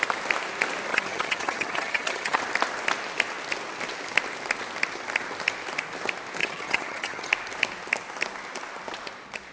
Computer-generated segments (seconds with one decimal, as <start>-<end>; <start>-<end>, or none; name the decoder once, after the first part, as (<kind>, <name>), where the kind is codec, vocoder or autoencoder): 0.9-2.4 (vocoder, HiFi-GAN); 6.4-7.3